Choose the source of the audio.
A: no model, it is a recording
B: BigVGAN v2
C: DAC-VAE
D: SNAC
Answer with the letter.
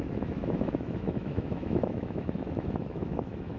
C